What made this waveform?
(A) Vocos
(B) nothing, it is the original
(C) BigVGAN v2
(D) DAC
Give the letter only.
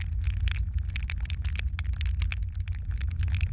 B